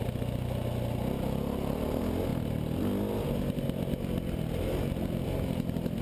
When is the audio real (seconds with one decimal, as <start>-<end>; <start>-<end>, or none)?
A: 0.0-6.0